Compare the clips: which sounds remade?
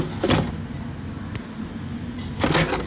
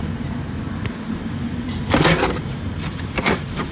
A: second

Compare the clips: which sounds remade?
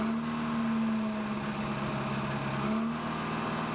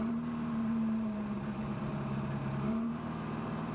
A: second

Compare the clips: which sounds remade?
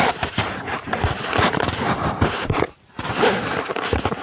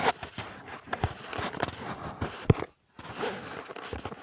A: first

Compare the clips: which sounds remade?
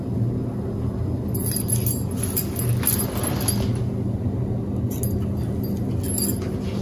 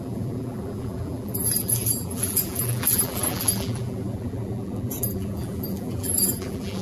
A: second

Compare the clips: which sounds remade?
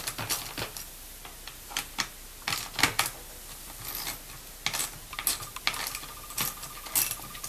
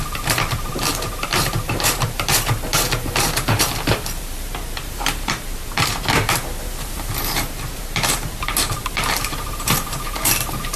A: second